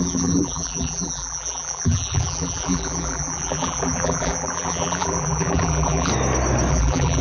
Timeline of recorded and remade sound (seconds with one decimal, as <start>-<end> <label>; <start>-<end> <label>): 0.0-6.1 remade; 6.1-6.7 recorded; 6.7-7.2 remade